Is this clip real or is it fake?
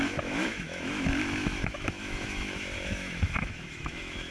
fake